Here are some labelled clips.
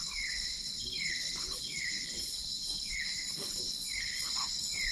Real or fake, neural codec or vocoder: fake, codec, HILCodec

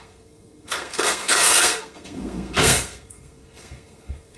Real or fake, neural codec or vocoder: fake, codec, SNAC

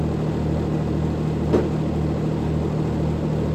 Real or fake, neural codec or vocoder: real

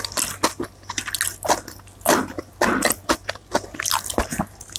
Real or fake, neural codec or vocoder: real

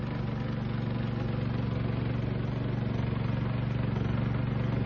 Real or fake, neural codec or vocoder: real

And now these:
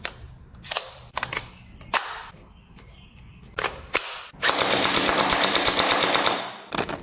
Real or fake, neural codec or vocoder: fake, vocoder, BigVGAN v2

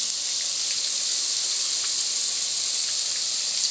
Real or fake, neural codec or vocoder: real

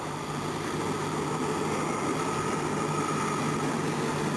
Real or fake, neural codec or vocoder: real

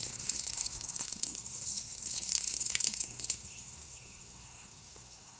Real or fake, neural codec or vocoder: fake, codec, SNAC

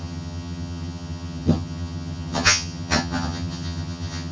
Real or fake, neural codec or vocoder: fake, vocoder, HiFi-GAN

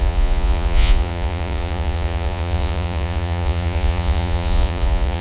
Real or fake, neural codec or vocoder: fake, vocoder, Vocos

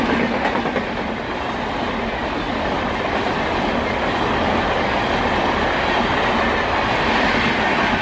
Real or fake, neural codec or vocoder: real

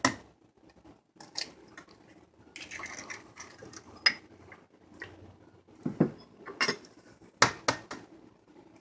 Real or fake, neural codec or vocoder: real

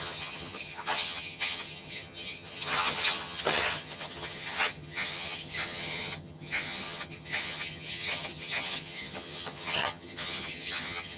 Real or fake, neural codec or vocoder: fake, vocoder, HiFi-GAN